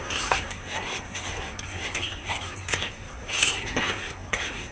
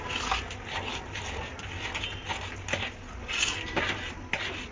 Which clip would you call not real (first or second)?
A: first